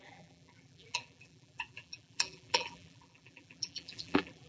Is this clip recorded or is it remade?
remade